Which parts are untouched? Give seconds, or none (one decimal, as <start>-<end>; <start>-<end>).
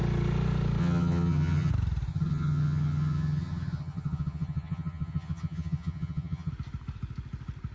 0.0-0.8; 1.7-2.1; 6.5-7.7